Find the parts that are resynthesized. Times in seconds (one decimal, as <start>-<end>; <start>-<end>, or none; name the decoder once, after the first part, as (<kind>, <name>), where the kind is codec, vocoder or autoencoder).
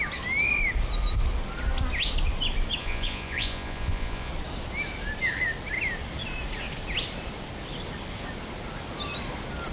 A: 2.8-4.3 (vocoder, Vocos)